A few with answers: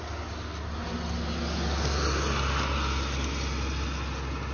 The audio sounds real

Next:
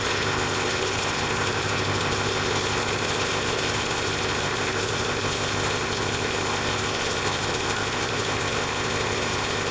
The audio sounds fake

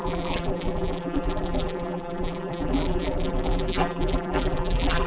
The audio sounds fake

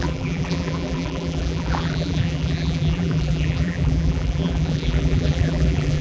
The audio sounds fake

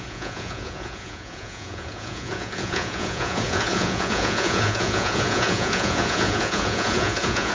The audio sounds fake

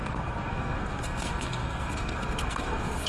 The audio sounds fake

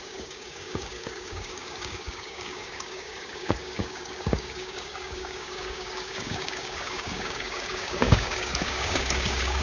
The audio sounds fake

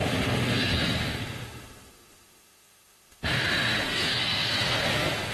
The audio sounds fake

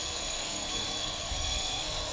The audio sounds fake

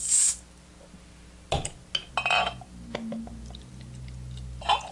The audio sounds real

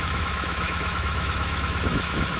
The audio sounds fake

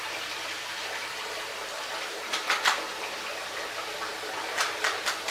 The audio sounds fake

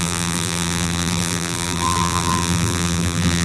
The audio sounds fake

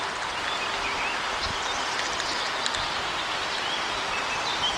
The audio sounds real